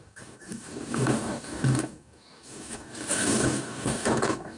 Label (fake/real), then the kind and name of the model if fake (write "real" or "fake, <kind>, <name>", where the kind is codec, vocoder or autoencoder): fake, codec, DAC